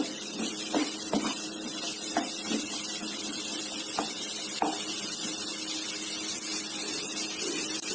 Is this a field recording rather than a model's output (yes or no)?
yes